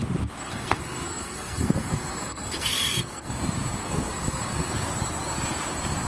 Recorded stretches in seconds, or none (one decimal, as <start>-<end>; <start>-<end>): 0.0-0.4; 3.3-3.8; 4.7-6.1